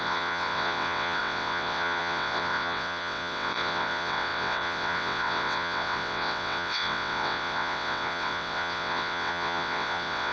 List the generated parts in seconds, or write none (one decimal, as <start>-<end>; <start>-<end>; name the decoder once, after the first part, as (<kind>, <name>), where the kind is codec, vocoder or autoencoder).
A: 0.0-10.3 (vocoder, WaveNeXt)